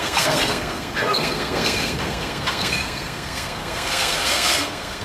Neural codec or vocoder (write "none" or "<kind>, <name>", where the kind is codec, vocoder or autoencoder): codec, SNAC